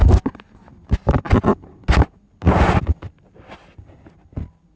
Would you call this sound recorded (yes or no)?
yes